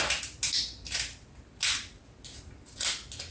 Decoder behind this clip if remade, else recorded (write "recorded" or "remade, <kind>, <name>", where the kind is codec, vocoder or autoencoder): recorded